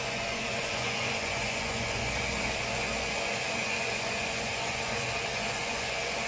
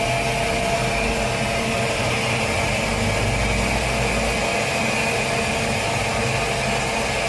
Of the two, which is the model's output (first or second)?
first